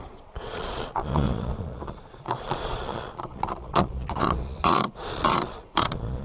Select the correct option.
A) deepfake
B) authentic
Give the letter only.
A